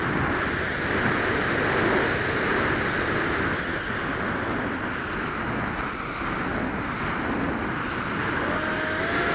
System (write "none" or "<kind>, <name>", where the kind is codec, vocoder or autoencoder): none